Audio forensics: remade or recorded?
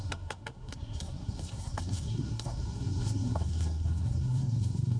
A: remade